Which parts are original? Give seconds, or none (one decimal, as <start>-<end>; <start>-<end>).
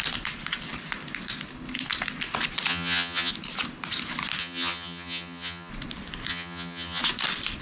0.0-2.7; 3.3-4.4; 5.7-6.3; 7.0-7.6